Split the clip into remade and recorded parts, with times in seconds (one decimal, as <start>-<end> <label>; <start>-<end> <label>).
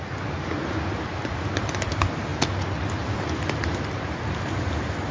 0.0-5.1 recorded